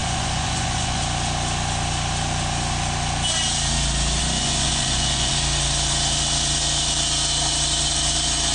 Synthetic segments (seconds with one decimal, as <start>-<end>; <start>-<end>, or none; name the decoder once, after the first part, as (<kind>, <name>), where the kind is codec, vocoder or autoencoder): 0.0-1.0 (vocoder, Vocos); 4.2-5.3